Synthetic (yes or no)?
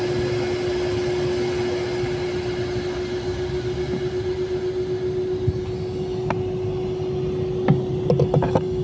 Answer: no